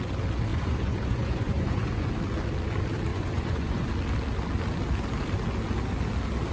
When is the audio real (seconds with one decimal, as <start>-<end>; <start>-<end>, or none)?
0.0-0.5; 2.1-3.1; 3.9-6.5